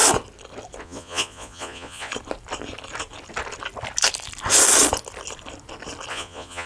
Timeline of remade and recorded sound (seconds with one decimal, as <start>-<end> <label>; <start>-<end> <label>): 0.0-0.8 recorded; 0.8-2.1 remade; 2.1-6.1 recorded; 6.1-6.7 remade